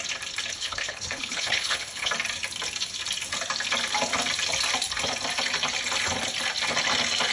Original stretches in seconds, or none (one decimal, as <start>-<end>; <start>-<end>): 0.0-0.5; 2.1-7.3